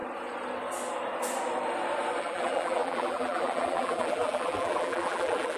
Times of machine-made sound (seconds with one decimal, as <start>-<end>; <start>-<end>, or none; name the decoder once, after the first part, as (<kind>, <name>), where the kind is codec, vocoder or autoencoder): 2.2-5.6 (vocoder, BigVGAN v2)